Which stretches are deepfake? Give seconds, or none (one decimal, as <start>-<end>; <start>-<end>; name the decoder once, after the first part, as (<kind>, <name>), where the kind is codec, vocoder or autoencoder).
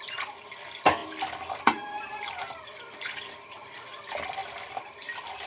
0.0-1.0 (vocoder, BigVGAN v2); 1.6-5.5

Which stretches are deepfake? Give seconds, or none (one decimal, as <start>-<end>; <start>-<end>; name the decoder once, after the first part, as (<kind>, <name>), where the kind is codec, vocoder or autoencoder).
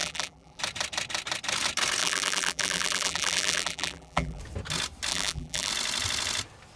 0.0-0.6 (vocoder, BigVGAN v2); 2.0-4.4; 5.1-5.7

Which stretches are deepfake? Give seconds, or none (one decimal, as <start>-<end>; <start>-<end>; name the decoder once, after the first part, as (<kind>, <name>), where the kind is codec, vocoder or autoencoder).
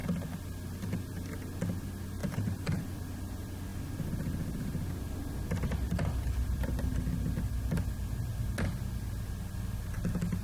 2.2-2.8 (vocoder, BigVGAN v2)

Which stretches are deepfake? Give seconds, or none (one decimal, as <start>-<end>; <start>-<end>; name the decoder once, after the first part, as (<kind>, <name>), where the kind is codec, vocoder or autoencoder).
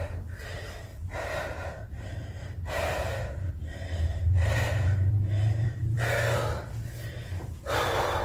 0.0-8.2 (vocoder, BigVGAN v2)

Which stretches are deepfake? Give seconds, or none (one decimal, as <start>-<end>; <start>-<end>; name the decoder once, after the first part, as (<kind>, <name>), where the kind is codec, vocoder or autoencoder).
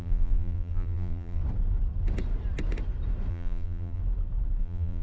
0.0-1.4 (vocoder, BigVGAN v2); 3.3-4.0; 4.6-5.0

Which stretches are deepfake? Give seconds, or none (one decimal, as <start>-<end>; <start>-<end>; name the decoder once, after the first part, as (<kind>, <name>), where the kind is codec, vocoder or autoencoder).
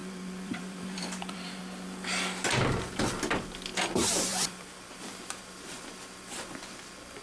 0.0-1.6 (vocoder, BigVGAN v2); 4.3-5.2